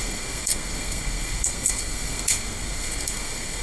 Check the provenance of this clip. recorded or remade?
remade